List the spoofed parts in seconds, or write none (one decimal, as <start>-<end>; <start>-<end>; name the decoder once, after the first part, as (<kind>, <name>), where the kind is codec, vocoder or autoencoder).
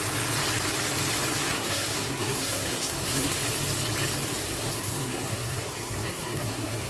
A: 1.4-3.4 (codec, SNAC); 4.4-6.9